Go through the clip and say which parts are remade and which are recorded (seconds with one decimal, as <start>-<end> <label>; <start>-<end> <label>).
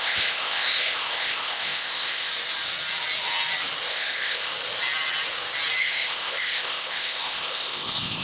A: 0.0-2.3 remade; 2.3-3.9 recorded; 3.9-4.5 remade; 4.5-5.8 recorded; 5.8-8.2 remade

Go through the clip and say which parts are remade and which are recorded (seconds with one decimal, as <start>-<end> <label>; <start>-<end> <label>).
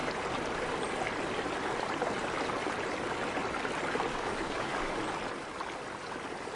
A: 0.0-4.1 recorded; 4.1-5.0 remade; 5.0-6.5 recorded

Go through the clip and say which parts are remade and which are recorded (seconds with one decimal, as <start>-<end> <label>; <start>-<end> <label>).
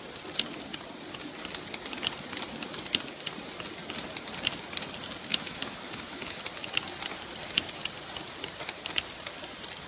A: 0.0-5.3 recorded; 5.3-6.4 remade; 6.4-9.9 recorded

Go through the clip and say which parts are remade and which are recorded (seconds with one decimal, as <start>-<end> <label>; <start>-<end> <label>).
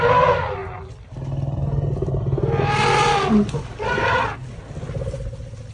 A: 0.0-5.7 recorded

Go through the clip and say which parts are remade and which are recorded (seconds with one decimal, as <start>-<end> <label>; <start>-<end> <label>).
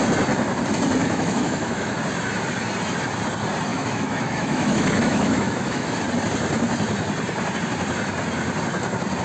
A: 0.0-1.0 recorded; 1.0-2.0 remade; 2.0-3.7 recorded; 3.7-6.0 remade; 6.0-9.2 recorded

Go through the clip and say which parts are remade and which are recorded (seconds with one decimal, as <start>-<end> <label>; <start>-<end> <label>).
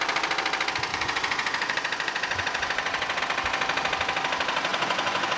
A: 0.0-0.9 recorded; 0.9-3.2 remade; 3.2-4.7 recorded; 4.7-5.4 remade